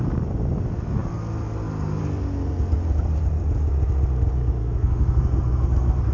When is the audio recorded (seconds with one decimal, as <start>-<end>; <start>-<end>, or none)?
0.0-4.6